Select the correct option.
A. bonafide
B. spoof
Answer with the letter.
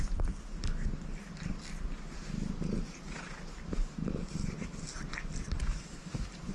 A